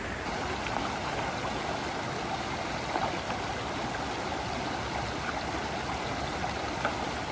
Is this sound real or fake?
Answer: real